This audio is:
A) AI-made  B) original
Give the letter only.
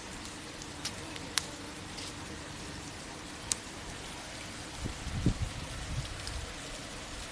B